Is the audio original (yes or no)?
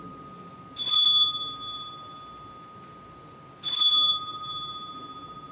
yes